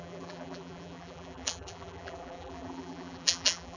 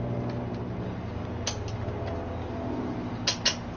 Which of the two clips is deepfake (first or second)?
first